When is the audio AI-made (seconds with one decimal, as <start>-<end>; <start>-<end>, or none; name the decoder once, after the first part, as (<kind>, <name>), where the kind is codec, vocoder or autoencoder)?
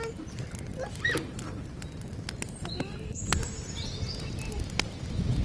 none